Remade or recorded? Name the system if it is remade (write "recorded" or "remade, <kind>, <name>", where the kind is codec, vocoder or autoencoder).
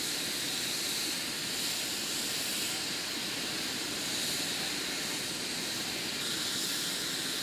remade, vocoder, BigVGAN v2